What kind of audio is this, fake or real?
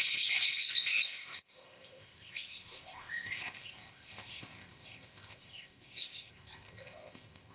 fake